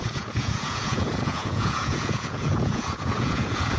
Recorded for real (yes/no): no